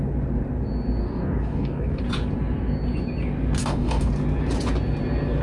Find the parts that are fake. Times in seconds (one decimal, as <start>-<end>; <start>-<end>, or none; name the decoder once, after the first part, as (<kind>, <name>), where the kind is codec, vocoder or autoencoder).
1.0-2.0 (codec, DAC); 3.6-4.1